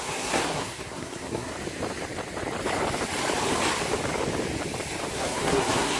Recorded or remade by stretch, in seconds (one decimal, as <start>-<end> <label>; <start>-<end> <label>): 0.0-1.5 remade; 1.5-5.1 recorded; 5.1-6.0 remade